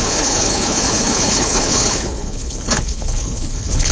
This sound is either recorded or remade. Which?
remade